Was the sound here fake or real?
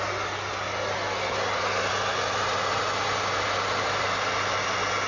real